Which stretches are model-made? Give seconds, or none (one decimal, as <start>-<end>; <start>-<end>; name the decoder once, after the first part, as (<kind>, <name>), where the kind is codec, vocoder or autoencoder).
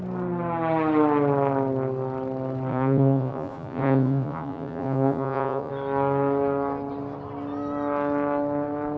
2.7-5.7 (vocoder, Vocos)